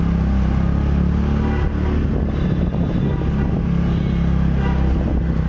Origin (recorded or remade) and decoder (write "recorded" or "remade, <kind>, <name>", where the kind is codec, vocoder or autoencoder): recorded